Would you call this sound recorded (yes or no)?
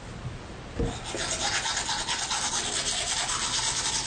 yes